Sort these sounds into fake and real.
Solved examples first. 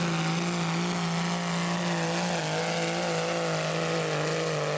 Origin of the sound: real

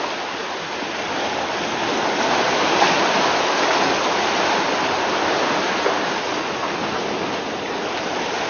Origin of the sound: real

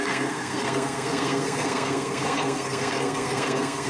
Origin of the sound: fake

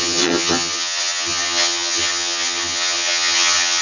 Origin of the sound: fake